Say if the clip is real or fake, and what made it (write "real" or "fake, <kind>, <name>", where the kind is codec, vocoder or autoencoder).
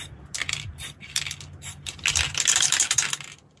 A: real